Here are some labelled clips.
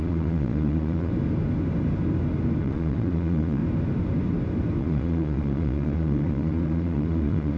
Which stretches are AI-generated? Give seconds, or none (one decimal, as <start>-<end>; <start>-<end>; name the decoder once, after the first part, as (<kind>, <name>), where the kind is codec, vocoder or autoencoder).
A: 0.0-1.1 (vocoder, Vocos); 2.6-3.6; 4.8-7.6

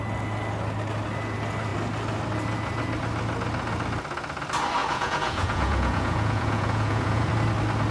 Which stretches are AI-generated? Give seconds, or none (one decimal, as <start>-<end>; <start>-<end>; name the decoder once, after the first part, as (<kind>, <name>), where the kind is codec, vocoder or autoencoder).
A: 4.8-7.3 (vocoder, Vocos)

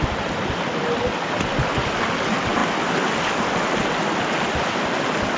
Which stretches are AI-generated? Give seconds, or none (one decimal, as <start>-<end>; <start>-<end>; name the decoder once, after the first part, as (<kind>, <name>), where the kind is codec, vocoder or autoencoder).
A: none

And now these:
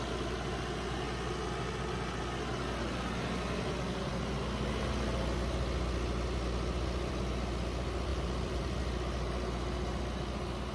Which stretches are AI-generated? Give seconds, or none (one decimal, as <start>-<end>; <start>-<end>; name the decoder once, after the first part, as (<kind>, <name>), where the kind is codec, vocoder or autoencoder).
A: 8.1-8.8 (vocoder, BigVGAN v2)

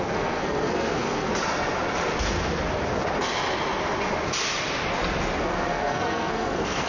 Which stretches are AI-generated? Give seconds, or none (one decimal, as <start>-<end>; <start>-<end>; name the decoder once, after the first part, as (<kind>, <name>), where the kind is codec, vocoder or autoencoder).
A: 0.0-1.3 (codec, SNAC); 5.4-6.9